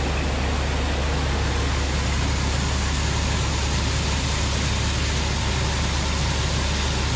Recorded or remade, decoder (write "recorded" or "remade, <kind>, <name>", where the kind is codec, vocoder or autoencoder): recorded